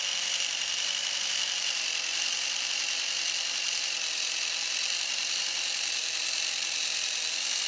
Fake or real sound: real